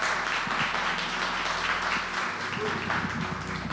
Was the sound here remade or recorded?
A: recorded